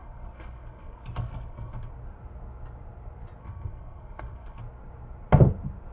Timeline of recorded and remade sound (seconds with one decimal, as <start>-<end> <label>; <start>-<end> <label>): 0.0-1.9 remade; 1.9-3.4 recorded; 3.4-4.6 remade; 4.6-5.9 recorded